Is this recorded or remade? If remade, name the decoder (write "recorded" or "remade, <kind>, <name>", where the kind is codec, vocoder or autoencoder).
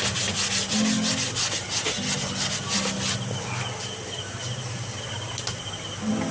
recorded